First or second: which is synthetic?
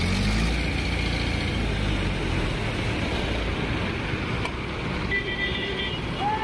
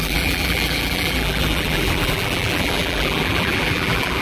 second